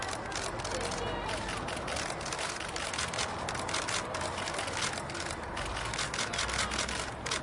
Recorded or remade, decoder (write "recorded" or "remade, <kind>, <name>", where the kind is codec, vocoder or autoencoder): recorded